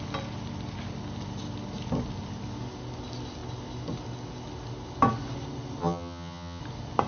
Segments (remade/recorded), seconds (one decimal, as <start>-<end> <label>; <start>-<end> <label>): 0.0-5.8 recorded; 5.8-6.6 remade; 6.6-7.1 recorded